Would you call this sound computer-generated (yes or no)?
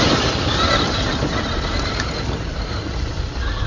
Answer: no